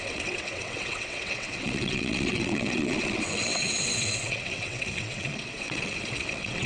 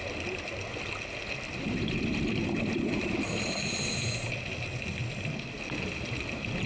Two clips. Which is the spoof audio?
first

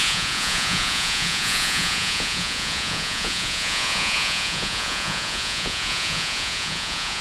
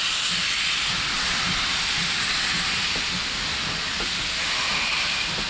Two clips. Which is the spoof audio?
first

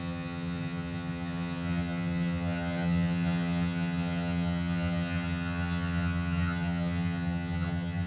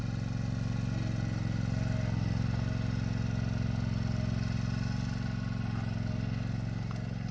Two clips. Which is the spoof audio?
first